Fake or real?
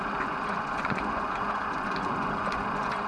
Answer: fake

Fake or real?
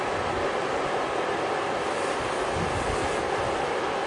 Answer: real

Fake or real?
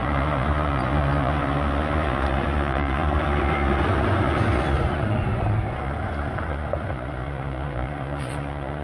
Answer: fake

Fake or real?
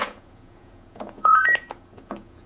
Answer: fake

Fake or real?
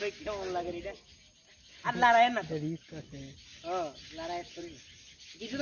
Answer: real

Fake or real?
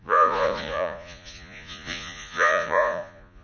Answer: fake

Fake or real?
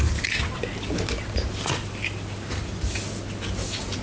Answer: real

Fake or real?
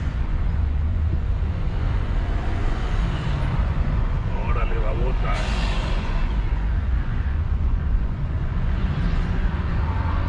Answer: fake